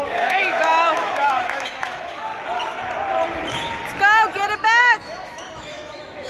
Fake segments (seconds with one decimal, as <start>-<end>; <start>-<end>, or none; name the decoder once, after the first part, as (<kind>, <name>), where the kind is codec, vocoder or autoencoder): 0.0-2.3 (autoencoder, DAC-VAE); 4.8-6.3